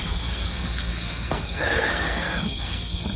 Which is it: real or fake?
fake